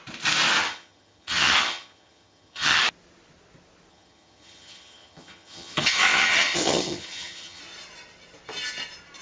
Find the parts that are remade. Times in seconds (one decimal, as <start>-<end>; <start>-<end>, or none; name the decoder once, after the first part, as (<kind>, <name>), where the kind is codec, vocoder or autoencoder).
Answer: 0.6-2.8 (vocoder, HiFi-GAN); 3.9-7.6